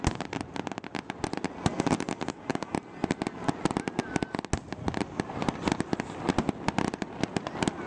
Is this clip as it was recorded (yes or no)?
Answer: yes